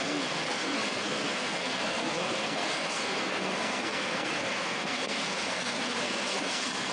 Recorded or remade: remade